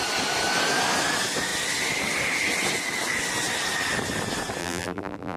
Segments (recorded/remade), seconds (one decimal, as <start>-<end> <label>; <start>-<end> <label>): 0.0-4.6 recorded; 4.6-5.4 remade

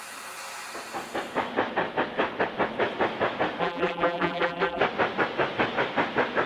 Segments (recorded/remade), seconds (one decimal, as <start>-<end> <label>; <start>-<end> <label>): 0.0-3.6 recorded; 3.6-4.8 remade; 4.8-6.5 recorded

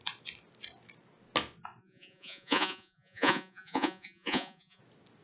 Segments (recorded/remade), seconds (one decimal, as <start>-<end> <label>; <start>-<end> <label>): 0.0-1.8 recorded; 1.8-4.8 remade; 4.8-5.2 recorded

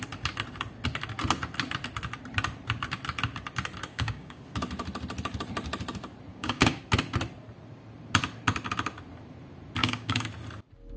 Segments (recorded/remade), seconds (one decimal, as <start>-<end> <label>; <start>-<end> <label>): 0.0-3.9 recorded; 3.9-4.4 remade; 4.4-6.3 recorded; 6.3-6.8 remade; 6.8-9.8 recorded; 9.8-10.3 remade; 10.3-11.0 recorded